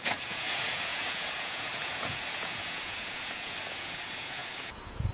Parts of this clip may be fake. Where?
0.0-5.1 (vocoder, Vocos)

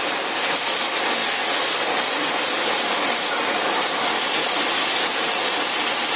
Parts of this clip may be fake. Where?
4.4-5.3 (vocoder, BigVGAN v2)

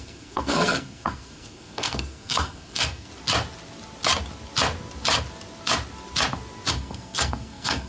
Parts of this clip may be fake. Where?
0.0-3.1 (codec, SNAC); 6.7-7.9

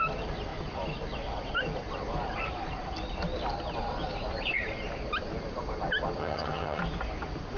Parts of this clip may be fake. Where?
6.2-6.8 (vocoder, HiFi-GAN)